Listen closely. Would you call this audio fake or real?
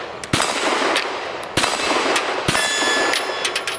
real